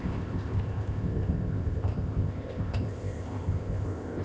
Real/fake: fake